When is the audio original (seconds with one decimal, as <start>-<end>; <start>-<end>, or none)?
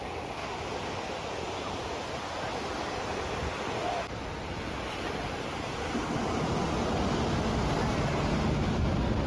0.0-9.3